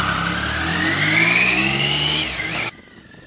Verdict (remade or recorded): recorded